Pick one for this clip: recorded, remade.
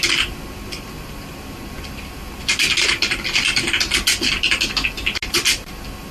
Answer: recorded